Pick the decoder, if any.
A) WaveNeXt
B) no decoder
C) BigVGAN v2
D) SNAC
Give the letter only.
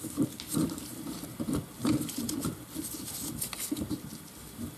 B